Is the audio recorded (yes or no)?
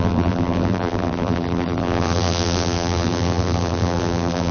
no